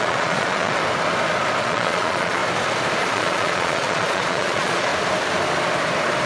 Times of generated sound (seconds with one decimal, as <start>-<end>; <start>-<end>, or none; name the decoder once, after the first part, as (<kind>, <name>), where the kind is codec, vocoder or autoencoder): 0.0-0.8 (vocoder, Vocos); 1.6-2.4; 3.0-4.9